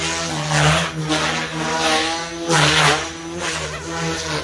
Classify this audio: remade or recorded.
recorded